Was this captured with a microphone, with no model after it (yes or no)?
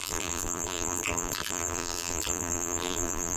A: no